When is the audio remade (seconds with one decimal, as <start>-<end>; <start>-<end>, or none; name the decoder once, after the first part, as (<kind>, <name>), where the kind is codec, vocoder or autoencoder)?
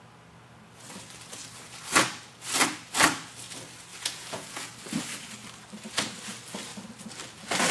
3.9-4.7 (vocoder, Vocos)